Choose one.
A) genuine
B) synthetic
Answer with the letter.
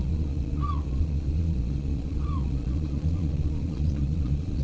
B